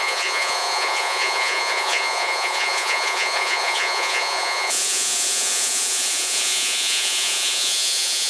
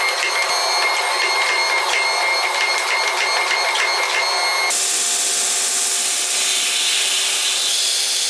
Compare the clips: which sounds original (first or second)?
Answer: second